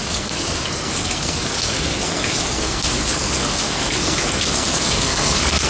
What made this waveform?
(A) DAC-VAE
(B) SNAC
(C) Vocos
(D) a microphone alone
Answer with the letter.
B